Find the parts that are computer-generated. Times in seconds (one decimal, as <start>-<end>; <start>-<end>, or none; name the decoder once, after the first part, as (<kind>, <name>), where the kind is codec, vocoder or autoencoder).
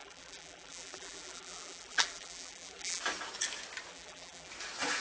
0.0-3.0 (vocoder, BigVGAN v2); 3.9-4.5